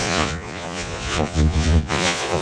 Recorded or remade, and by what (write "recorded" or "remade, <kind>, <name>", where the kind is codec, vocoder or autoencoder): remade, vocoder, Vocos